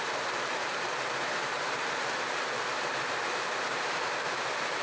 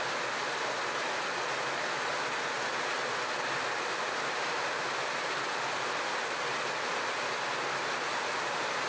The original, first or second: second